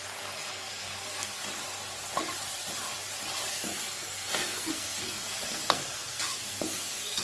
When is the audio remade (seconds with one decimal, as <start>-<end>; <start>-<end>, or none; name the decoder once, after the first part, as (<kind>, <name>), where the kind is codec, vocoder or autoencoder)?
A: 0.0-1.4 (codec, SNAC); 3.5-7.2